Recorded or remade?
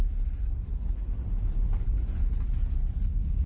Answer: recorded